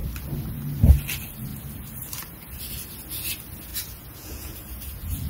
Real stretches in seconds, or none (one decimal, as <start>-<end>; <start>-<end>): 0.0-3.7